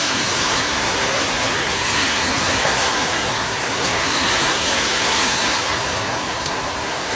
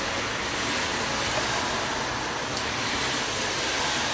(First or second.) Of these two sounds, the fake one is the first